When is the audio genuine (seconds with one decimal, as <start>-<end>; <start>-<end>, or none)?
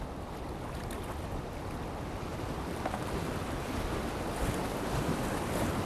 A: 0.0-2.3; 3.7-5.9